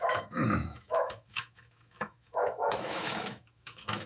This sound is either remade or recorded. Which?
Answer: remade